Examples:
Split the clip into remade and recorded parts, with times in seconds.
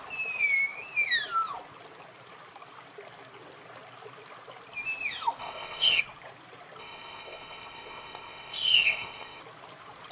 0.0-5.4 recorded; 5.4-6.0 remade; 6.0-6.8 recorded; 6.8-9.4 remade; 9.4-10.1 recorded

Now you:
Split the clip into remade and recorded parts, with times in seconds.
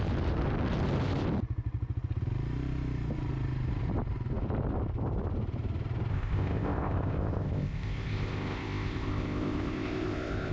0.0-6.1 recorded; 6.1-10.5 remade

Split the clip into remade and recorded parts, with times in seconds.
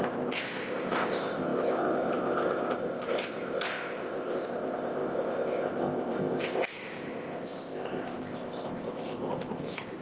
0.0-10.0 remade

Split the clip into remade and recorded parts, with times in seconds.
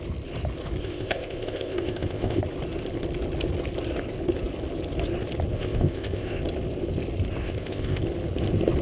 0.0-0.8 recorded; 0.8-2.4 remade; 2.4-5.5 recorded; 5.5-6.4 remade; 6.4-7.4 recorded; 7.4-8.0 remade; 8.0-8.8 recorded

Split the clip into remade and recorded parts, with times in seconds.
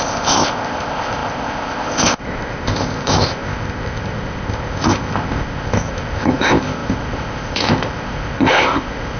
0.0-9.2 remade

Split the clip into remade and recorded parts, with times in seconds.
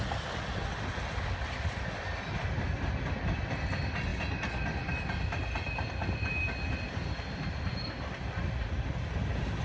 0.0-9.6 recorded